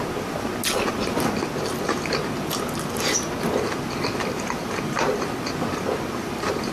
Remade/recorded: recorded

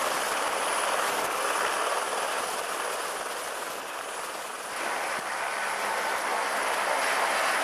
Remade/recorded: recorded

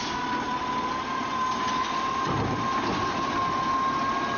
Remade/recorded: recorded